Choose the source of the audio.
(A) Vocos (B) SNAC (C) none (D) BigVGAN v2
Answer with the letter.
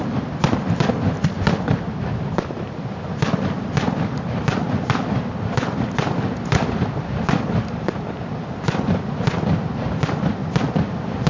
D